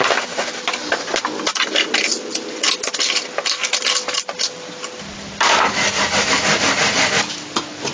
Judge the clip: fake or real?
real